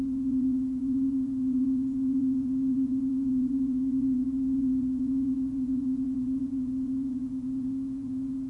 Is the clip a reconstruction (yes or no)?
yes